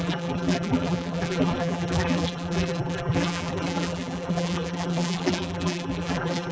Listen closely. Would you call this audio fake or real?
fake